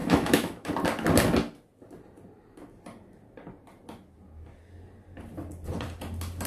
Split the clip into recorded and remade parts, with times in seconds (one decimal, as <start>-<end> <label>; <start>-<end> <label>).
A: 0.0-0.7 remade; 0.7-6.5 recorded